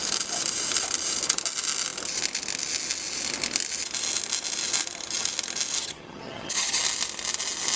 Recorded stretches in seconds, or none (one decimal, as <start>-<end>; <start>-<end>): 0.0-5.8; 6.8-7.8